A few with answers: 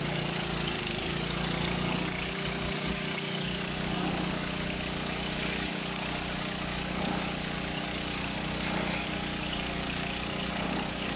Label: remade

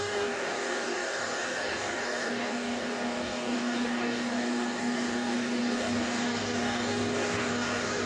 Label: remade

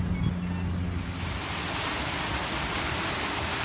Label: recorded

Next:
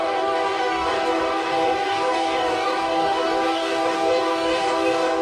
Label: remade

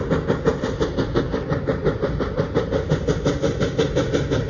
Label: recorded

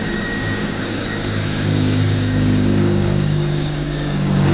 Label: remade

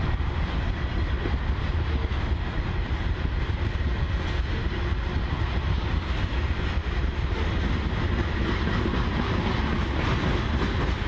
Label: recorded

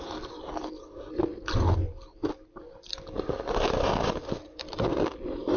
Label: recorded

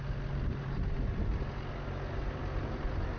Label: recorded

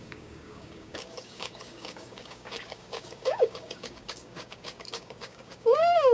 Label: remade